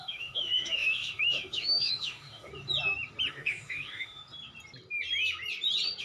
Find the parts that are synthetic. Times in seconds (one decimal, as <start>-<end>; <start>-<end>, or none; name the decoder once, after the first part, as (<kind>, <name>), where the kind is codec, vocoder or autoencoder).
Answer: 0.0-2.5 (autoencoder, DAC-VAE); 3.3-4.2